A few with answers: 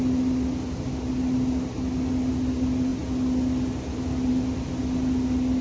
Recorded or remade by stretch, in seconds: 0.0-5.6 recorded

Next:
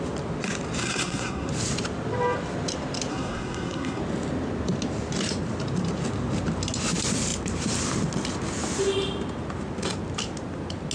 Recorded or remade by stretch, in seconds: 0.0-0.8 recorded; 0.8-1.5 remade; 1.5-3.1 recorded; 3.1-4.0 remade; 4.0-10.9 recorded

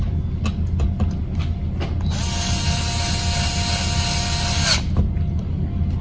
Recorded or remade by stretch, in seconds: 0.0-6.0 recorded